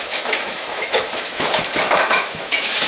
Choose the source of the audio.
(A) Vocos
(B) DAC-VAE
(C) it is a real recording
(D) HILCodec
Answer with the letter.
B